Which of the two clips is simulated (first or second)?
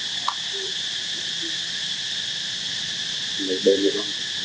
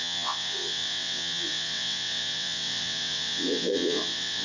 second